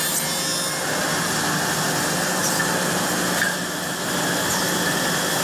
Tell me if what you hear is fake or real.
real